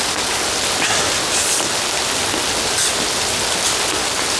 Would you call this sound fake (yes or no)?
no